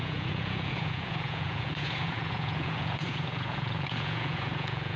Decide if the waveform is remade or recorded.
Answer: remade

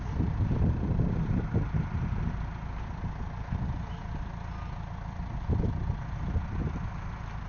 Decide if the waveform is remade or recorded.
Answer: recorded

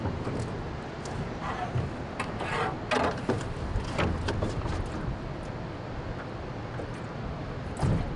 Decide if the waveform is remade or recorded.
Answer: recorded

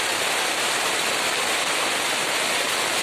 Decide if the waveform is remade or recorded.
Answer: recorded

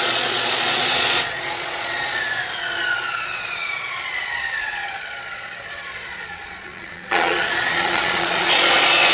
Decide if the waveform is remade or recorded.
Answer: remade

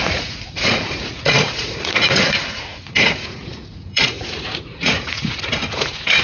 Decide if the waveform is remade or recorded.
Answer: remade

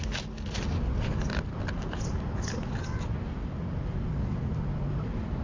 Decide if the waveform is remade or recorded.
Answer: recorded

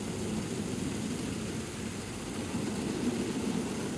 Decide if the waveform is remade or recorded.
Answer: recorded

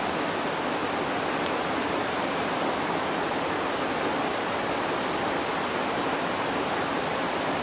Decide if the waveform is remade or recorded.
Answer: recorded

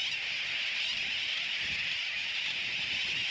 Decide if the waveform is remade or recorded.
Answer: recorded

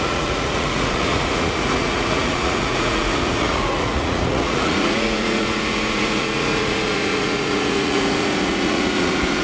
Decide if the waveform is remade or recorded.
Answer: remade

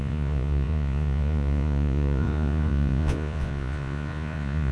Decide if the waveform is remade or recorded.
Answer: remade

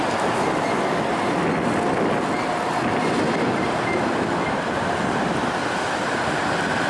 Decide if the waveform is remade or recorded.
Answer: recorded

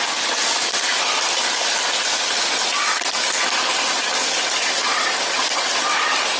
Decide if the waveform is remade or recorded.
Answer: recorded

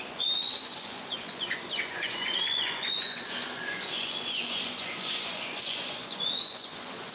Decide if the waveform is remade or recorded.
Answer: remade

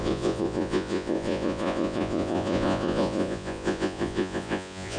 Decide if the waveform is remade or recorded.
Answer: remade